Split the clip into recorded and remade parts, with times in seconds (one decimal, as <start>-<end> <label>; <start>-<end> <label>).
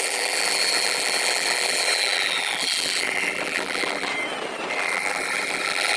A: 0.0-4.1 remade; 4.1-4.7 recorded; 4.7-6.0 remade